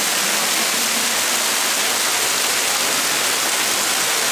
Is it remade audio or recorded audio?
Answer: recorded